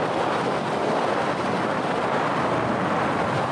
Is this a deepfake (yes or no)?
no